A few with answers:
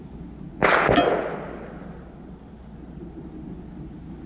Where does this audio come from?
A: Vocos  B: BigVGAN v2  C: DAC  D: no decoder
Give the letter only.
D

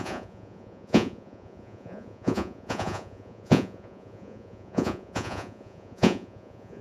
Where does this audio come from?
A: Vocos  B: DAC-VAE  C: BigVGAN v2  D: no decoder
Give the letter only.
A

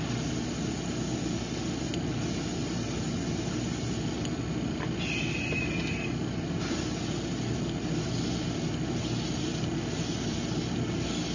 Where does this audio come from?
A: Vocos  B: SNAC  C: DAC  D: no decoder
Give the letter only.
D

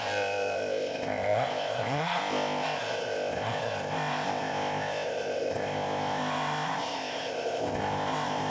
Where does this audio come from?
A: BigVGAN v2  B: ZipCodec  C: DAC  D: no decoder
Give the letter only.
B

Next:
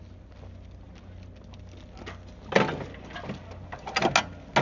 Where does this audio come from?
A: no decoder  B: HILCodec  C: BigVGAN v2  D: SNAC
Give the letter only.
A